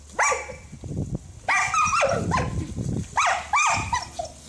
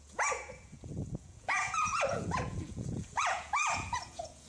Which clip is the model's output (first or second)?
second